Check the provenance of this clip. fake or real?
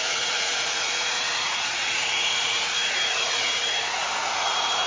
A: fake